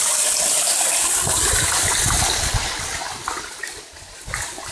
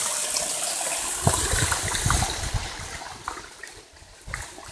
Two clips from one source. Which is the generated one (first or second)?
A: second